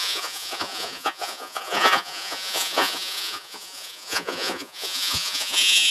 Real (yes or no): no